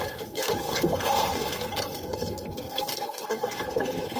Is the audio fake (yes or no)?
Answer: yes